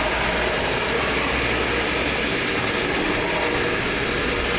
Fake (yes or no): no